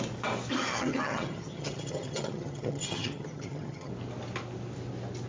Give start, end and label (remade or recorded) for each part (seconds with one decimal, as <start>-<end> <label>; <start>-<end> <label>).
0.0-0.7 recorded; 0.7-3.9 remade; 3.9-5.3 recorded